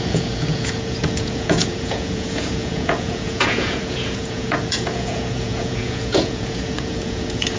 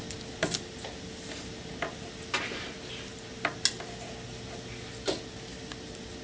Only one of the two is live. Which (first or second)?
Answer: second